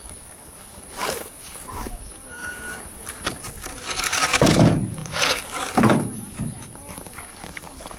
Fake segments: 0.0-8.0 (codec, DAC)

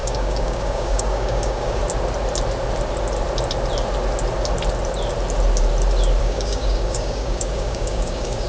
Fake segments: 0.0-1.8 (codec, DAC); 6.2-8.5

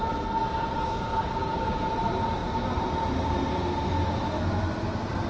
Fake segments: 0.7-1.8 (codec, DAC)

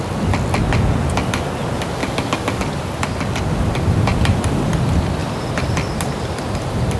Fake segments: 2.0-2.6 (codec, DAC)

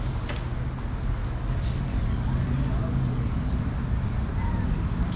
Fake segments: 1.2-2.3 (codec, DAC); 2.8-3.7

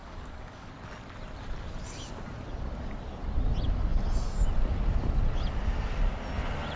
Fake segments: 0.0-0.7 (codec, DAC)